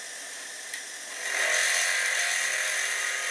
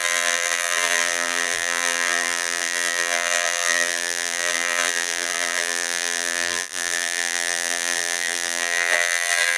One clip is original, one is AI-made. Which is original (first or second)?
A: first